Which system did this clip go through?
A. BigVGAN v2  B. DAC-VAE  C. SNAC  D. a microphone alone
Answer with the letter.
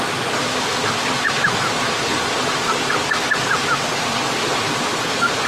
D